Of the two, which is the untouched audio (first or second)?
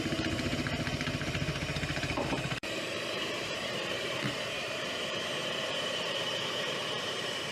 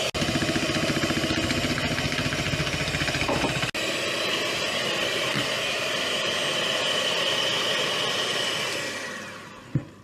second